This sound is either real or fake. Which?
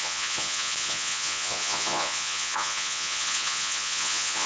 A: fake